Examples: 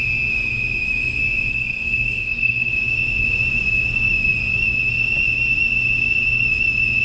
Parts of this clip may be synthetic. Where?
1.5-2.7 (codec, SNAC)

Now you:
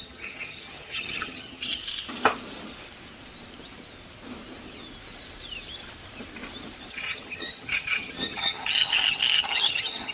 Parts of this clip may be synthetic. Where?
0.0-1.8 (vocoder, HiFi-GAN); 6.9-10.1

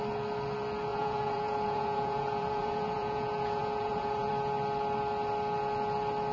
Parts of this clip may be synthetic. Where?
0.9-4.3 (vocoder, Vocos)

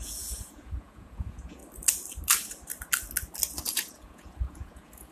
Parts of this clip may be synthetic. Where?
0.0-1.6 (vocoder, Vocos); 3.7-5.1